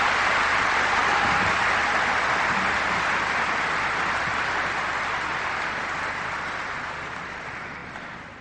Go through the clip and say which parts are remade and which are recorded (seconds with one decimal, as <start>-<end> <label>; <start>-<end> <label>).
0.0-8.4 recorded

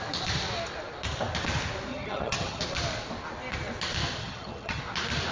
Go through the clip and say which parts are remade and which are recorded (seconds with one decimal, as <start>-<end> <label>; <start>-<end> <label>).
0.0-1.9 recorded; 1.9-2.6 remade; 2.6-4.2 recorded; 4.2-4.8 remade; 4.8-5.3 recorded

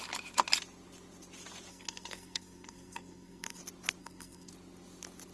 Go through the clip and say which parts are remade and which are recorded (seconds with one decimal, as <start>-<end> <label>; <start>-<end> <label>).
0.0-1.7 recorded; 1.7-3.6 remade; 3.6-4.0 recorded; 4.0-4.5 remade; 4.5-5.3 recorded

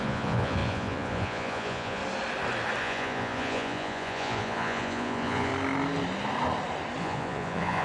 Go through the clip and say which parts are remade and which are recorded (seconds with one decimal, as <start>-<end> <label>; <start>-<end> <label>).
0.0-2.0 remade; 2.0-2.8 recorded; 2.8-5.5 remade; 5.5-7.0 recorded; 7.0-7.8 remade

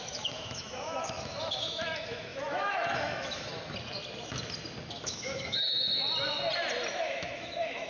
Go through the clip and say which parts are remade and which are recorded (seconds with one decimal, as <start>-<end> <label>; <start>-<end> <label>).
0.0-3.5 remade; 3.5-5.0 recorded; 5.0-6.0 remade; 6.0-6.9 recorded; 6.9-7.9 remade

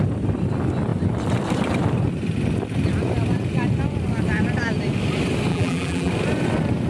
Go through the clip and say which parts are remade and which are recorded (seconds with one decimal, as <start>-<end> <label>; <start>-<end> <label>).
0.0-5.5 recorded; 5.5-6.1 remade; 6.1-6.9 recorded

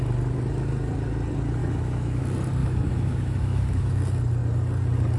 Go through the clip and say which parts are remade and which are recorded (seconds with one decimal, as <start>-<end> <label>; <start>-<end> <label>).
0.0-1.6 recorded; 1.6-2.2 remade; 2.2-2.6 recorded; 2.6-4.0 remade; 4.0-5.2 recorded

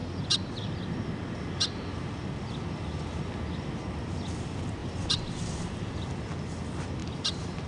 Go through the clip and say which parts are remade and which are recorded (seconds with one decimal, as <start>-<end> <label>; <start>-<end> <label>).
0.0-4.8 recorded; 4.8-5.9 remade; 5.9-7.0 recorded; 7.0-7.7 remade